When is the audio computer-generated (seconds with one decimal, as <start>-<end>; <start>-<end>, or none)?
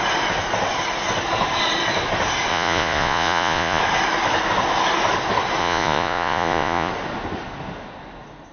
2.5-3.8; 5.6-6.9